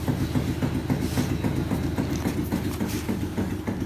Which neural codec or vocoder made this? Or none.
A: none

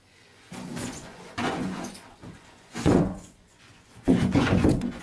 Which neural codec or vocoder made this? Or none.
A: vocoder, Vocos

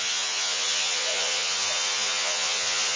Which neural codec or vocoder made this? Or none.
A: vocoder, Vocos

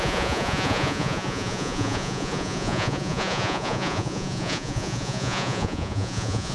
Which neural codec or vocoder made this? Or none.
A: vocoder, Vocos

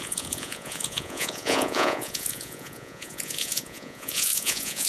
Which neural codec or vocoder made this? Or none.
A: vocoder, Vocos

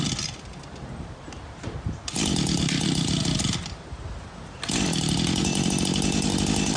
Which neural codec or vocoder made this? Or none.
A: none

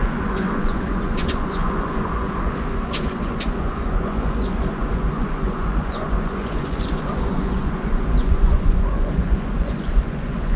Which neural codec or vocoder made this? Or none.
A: vocoder, Vocos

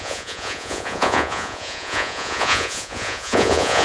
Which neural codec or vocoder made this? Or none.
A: vocoder, Vocos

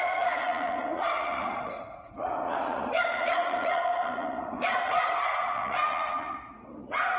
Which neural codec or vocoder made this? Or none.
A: vocoder, Vocos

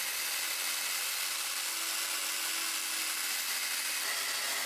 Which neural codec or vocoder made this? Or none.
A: none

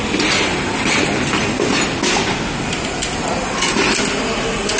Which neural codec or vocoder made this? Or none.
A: none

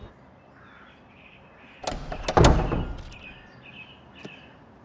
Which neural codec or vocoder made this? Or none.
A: none